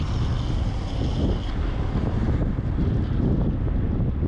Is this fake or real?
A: real